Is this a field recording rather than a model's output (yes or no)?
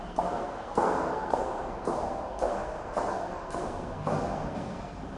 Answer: no